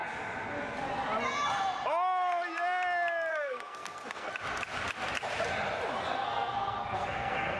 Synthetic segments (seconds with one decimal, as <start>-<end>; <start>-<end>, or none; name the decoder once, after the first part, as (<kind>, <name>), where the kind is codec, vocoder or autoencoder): 3.3-4.3 (codec, SNAC); 6.1-7.6

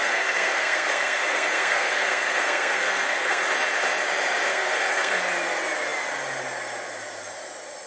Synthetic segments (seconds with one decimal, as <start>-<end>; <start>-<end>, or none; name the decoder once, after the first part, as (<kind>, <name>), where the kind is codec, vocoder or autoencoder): 0.0-3.4 (codec, SNAC); 4.5-5.2

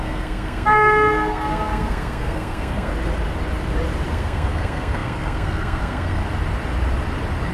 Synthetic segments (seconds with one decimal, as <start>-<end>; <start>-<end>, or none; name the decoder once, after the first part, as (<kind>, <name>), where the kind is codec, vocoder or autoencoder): 0.0-2.9 (codec, SNAC); 4.1-6.2

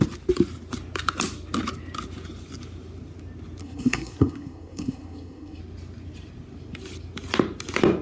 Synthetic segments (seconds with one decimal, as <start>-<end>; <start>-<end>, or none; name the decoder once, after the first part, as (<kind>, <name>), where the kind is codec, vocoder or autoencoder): 3.6-5.6 (codec, SNAC)

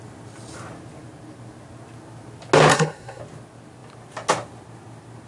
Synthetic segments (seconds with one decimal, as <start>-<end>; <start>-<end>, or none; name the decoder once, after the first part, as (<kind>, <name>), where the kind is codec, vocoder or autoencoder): 2.7-3.2 (codec, SNAC)

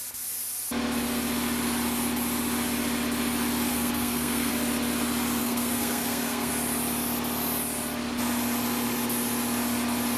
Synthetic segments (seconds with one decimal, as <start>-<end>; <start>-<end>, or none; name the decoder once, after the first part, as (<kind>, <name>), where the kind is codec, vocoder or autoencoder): 3.7-4.5 (codec, SNAC); 5.4-6.5

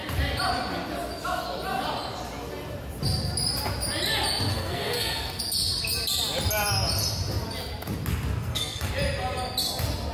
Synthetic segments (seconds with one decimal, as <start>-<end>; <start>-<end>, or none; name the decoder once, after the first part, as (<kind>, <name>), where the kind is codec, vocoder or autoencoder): 4.5-5.4 (codec, SNAC); 8.4-8.9

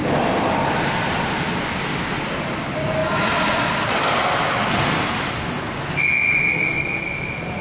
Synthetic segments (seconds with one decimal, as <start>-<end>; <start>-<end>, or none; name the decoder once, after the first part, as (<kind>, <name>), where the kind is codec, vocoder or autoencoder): none